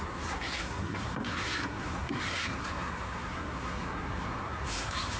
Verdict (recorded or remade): remade